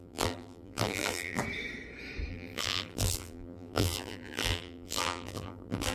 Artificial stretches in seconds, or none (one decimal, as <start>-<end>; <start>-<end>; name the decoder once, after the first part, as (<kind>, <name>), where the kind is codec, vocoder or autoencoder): 0.0-1.4 (vocoder, BigVGAN v2); 2.3-5.9